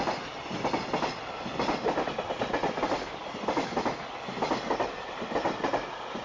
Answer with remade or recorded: recorded